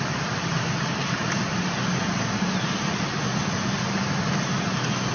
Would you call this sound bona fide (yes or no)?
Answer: yes